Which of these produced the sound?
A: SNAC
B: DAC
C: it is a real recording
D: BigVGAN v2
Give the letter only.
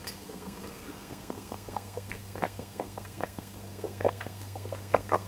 A